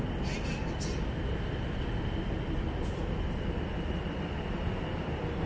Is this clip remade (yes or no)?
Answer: no